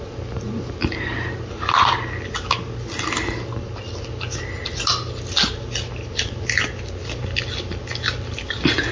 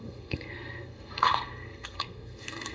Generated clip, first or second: second